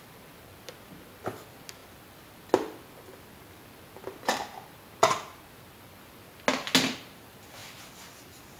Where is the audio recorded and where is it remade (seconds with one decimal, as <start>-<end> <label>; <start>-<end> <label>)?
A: 0.0-8.6 recorded